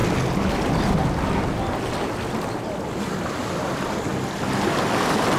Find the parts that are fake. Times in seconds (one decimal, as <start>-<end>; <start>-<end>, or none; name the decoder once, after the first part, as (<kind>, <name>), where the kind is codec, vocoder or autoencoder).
none